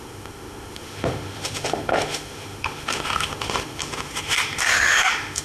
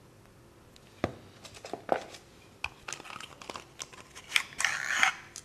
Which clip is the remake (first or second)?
first